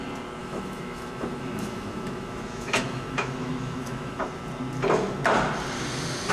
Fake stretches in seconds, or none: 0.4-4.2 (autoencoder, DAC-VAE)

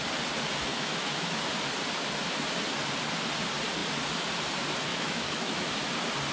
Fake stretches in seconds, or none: 0.7-1.5 (autoencoder, DAC-VAE); 4.9-5.7

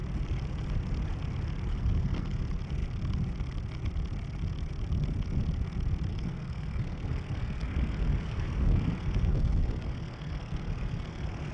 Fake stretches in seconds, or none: 1.7-2.4 (codec, SNAC); 6.1-11.5

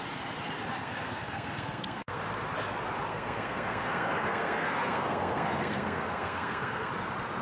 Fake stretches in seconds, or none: 0.8-2.2 (codec, SNAC); 3.1-6.9

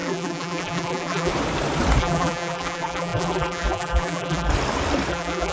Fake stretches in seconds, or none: 0.0-1.3 (vocoder, BigVGAN v2); 2.0-4.5; 5.1-5.5

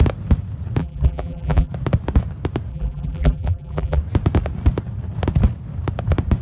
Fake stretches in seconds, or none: 0.8-1.7 (vocoder, BigVGAN v2); 2.7-4.0

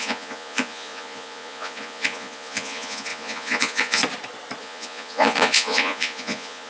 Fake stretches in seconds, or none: 0.0-4.0 (vocoder, Vocos); 4.6-6.7